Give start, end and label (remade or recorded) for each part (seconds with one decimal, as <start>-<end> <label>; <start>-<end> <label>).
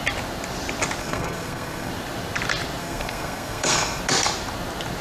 0.0-1.0 recorded; 1.0-1.9 remade; 1.9-2.8 recorded; 2.8-4.0 remade; 4.0-5.0 recorded